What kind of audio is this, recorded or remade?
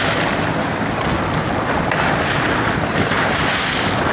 recorded